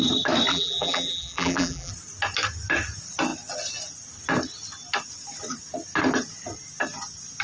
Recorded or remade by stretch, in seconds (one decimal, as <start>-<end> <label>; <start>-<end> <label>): 0.0-0.5 recorded; 0.5-1.9 remade; 1.9-7.4 recorded